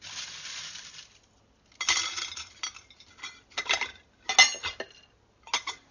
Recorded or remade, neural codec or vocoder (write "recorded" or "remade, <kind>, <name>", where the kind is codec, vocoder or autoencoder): recorded